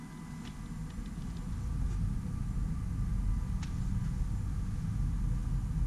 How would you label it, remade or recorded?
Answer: recorded